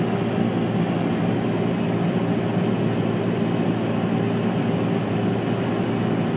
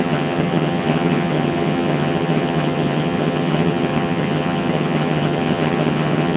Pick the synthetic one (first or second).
second